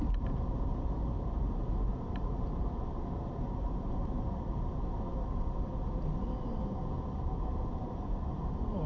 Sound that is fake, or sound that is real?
fake